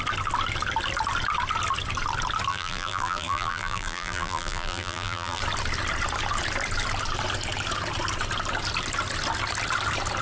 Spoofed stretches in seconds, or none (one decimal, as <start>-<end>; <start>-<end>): 2.5-5.4